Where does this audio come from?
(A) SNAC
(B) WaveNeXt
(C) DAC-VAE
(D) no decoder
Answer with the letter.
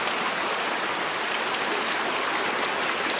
D